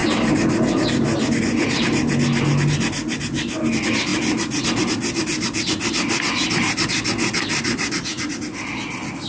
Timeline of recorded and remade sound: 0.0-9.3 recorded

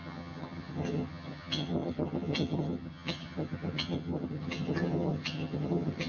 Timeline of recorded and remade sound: 0.0-6.1 remade

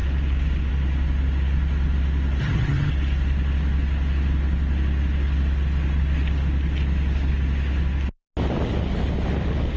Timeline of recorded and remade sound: 0.0-2.4 recorded; 2.4-2.9 remade; 2.9-9.8 recorded